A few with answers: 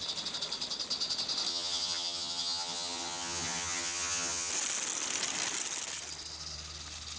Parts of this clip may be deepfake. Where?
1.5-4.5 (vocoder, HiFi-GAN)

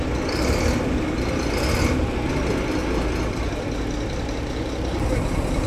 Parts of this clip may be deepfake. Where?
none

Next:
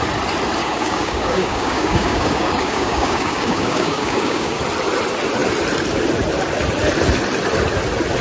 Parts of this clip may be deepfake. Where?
0.6-4.6 (codec, DAC)

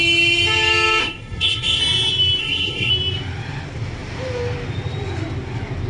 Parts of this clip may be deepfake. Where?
1.0-1.8 (codec, SNAC); 2.4-2.9